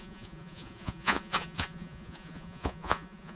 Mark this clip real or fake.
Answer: fake